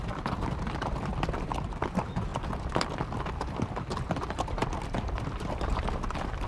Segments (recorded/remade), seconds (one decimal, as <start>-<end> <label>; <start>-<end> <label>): 0.0-1.1 remade; 1.1-1.8 recorded; 1.8-6.5 remade